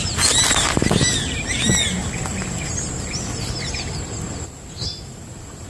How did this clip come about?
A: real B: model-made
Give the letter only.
A